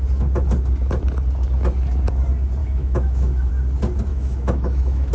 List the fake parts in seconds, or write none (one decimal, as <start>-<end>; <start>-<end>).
2.6-3.5; 4.1-5.1